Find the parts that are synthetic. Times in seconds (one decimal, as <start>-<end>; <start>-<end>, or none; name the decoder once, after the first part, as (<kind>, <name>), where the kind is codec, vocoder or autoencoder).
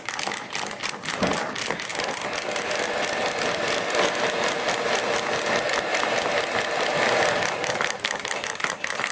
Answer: none